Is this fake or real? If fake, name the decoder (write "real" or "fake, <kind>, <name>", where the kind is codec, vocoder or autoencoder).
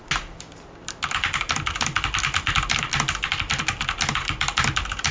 real